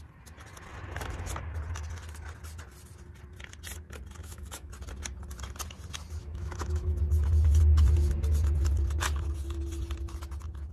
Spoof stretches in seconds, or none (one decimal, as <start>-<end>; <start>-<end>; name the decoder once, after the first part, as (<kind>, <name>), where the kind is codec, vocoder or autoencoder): 4.2-4.7 (autoencoder, DAC-VAE); 6.2-7.0